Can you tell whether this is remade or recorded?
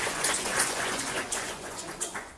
remade